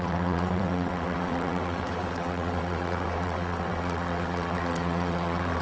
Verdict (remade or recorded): remade